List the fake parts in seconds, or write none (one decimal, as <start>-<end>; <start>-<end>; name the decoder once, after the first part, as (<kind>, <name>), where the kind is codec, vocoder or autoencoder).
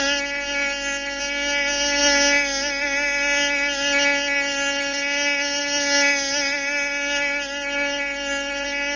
none